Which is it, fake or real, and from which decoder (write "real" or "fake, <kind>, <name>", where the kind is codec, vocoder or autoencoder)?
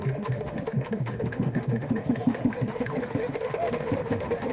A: fake, autoencoder, DAC-VAE